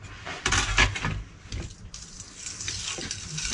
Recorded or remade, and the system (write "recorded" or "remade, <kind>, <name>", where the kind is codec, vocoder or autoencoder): recorded